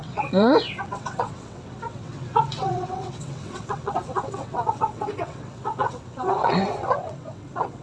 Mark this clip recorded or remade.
remade